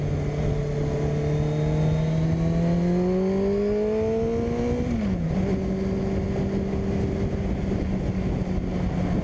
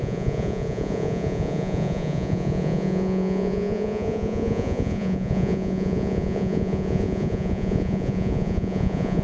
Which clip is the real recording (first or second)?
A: first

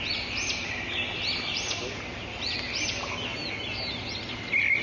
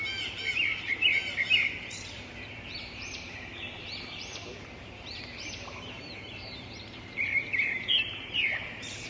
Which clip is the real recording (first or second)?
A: first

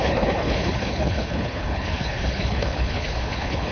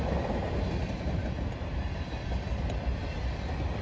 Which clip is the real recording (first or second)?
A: second